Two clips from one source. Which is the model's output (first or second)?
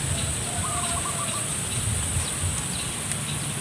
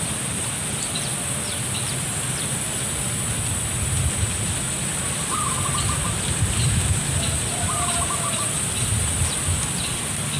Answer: first